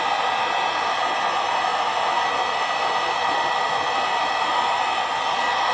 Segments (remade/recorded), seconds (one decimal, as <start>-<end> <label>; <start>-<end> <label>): 0.0-5.7 recorded